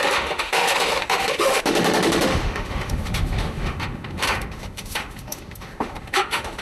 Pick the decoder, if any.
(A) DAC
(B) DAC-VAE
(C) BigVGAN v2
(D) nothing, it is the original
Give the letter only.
B